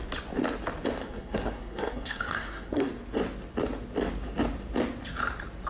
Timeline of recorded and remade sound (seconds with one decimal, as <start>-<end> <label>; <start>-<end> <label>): 0.0-1.0 recorded; 1.0-2.9 remade; 2.9-5.7 recorded